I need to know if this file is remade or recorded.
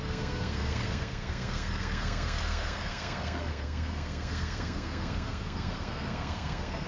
remade